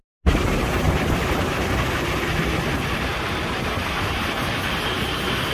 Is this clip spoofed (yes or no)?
no